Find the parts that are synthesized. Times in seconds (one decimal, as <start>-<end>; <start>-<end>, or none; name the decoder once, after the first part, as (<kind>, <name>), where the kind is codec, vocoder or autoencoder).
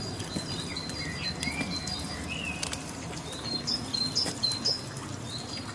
none